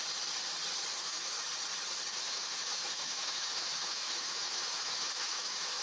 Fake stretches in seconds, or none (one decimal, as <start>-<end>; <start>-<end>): 0.9-1.4; 2.1-5.8

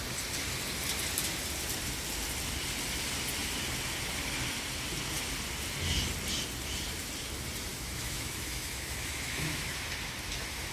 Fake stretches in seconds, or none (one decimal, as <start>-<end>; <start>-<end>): 7.7-9.7

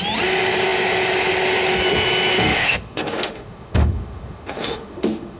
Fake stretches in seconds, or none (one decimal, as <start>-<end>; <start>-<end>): 2.3-5.4

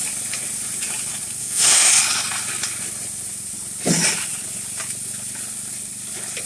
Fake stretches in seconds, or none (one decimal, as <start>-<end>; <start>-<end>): 1.4-1.9

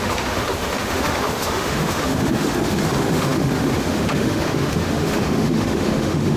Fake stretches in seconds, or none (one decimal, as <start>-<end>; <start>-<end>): 0.0-6.4

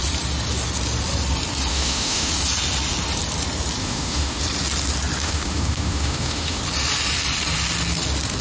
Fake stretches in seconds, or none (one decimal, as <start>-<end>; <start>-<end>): 1.7-2.3; 3.8-4.4; 5.2-6.6

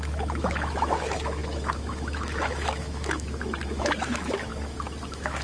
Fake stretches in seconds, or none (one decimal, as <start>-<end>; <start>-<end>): 0.0-5.4